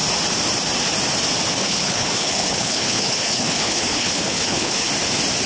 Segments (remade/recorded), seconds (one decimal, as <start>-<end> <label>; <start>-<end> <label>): 0.0-1.6 recorded; 1.6-4.9 remade; 4.9-5.5 recorded